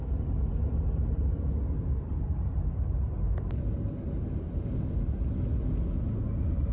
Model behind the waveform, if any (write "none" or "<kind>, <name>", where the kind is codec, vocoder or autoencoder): none